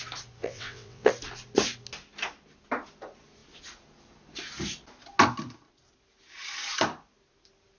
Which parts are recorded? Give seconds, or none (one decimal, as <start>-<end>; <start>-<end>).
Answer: 0.0-0.4; 1.1-7.8